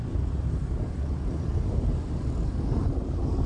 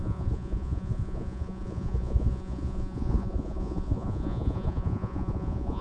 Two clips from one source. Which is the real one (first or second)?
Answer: first